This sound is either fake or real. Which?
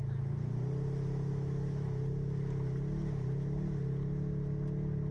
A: real